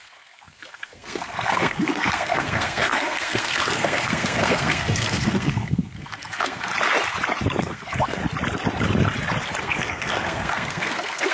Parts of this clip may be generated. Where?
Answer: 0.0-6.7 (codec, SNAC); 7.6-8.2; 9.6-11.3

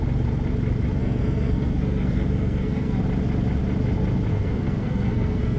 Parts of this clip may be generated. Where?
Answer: 1.0-3.0 (codec, SNAC); 4.3-5.6